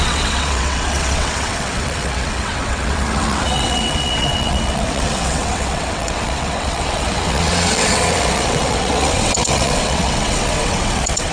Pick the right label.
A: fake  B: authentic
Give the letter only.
A